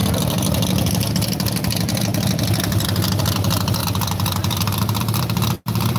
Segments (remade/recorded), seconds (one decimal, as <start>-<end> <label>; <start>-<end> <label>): 0.0-2.1 remade; 2.1-3.2 recorded; 3.2-3.8 remade; 3.8-5.0 recorded; 5.0-6.0 remade